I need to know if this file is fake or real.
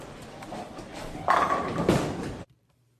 fake